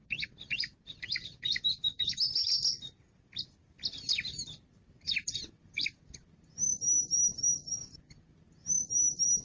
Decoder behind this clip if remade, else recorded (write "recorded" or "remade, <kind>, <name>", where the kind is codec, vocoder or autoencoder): recorded